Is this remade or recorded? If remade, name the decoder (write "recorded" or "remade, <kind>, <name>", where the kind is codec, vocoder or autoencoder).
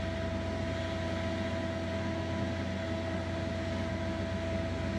recorded